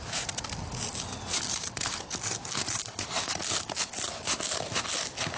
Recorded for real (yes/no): yes